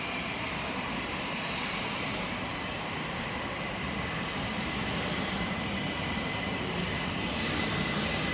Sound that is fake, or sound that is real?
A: fake